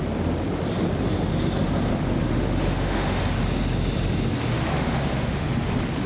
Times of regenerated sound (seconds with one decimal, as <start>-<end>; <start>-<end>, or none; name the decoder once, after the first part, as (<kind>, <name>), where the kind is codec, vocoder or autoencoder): 1.9-3.2 (autoencoder, DAC-VAE); 4.7-5.5